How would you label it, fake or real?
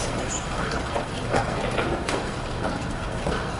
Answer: fake